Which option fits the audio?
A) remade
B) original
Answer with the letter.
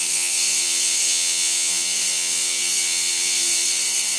A